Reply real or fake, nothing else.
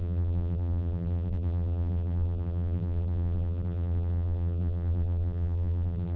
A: fake